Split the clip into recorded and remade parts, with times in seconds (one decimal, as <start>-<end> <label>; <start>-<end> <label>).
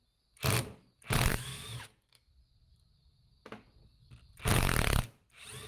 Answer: 0.0-1.3 recorded; 1.3-2.3 remade; 2.3-5.7 recorded